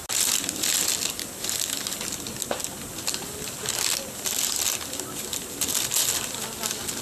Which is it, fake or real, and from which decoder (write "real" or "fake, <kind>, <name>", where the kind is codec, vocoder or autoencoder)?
real